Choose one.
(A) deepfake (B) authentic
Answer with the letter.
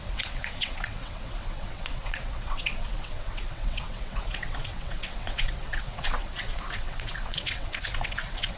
A